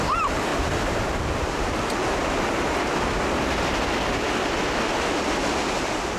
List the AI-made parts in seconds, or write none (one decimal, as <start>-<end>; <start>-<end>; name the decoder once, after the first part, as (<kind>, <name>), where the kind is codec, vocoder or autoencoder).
0.5-2.0 (vocoder, BigVGAN v2)